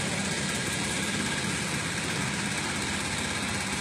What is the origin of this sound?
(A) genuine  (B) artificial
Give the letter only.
A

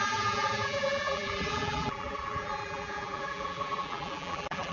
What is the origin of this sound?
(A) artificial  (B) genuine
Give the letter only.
A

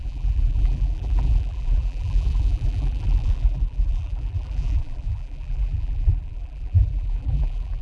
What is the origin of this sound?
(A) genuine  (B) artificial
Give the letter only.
B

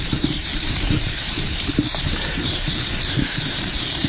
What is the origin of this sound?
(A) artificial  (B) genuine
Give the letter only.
A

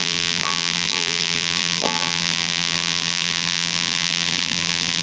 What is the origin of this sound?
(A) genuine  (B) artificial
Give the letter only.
B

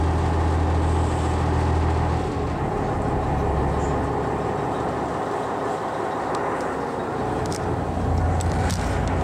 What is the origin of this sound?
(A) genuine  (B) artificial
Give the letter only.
A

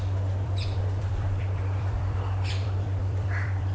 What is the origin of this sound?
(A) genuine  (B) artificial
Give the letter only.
B